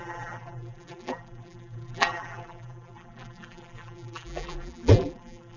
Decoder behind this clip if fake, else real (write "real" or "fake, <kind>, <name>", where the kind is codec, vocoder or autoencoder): fake, vocoder, BigVGAN v2